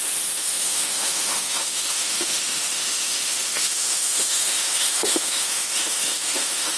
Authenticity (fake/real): fake